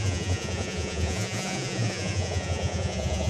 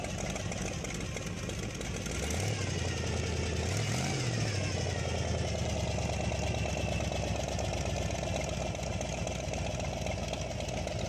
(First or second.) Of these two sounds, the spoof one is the first